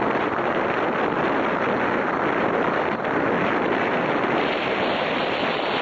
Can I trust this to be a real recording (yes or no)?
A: no